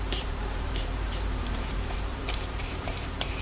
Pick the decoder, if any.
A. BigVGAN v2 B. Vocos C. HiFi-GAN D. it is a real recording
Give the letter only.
A